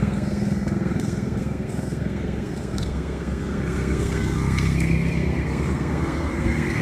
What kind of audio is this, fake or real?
fake